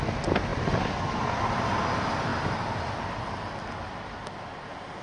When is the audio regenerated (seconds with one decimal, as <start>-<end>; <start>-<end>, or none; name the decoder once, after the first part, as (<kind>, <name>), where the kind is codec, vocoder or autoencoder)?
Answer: none